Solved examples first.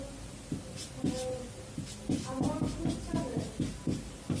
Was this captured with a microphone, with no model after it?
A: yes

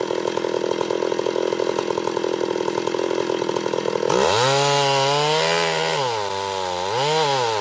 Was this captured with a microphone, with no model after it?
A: yes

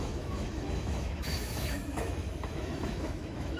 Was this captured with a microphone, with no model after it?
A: no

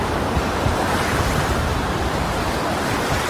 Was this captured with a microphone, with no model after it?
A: no